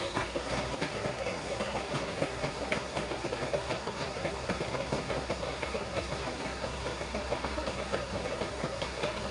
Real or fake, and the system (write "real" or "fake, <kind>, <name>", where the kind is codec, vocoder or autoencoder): fake, codec, SNAC